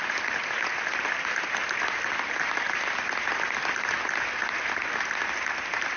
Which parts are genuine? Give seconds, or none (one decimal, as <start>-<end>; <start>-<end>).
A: 0.0-6.0